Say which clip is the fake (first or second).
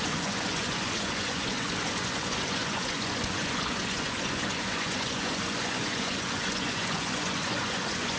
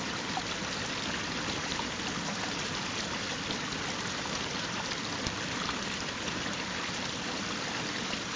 first